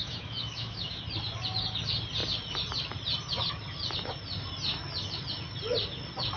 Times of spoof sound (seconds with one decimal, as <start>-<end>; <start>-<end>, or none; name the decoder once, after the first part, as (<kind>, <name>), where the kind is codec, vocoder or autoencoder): 0.0-1.0 (autoencoder, DAC-VAE)